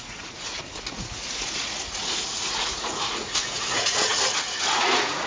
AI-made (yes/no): yes